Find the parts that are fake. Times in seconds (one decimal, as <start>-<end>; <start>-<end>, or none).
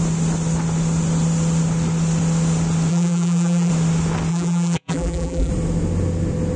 2.9-3.7; 4.3-5.5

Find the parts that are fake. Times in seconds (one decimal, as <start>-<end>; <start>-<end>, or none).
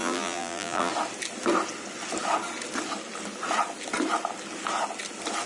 0.0-0.9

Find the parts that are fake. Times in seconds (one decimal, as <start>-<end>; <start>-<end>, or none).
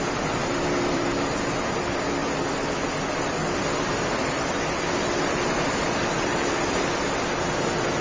0.4-1.1; 2.2-6.8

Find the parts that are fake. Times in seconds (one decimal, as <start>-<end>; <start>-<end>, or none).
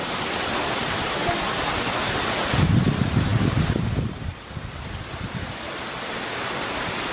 0.0-1.1; 3.3-5.4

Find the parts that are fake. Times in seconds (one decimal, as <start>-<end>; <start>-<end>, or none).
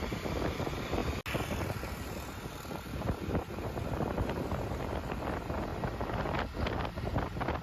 0.0-1.0; 4.7-5.7; 6.8-7.6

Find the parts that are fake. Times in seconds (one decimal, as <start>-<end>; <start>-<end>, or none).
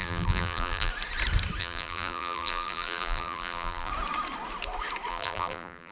0.0-0.9; 1.6-3.9; 5.1-5.9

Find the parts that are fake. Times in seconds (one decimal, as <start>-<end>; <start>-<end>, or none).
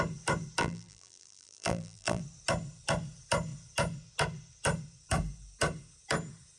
0.6-2.2